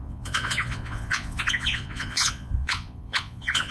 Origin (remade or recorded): remade